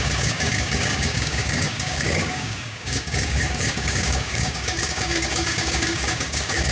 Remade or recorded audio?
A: remade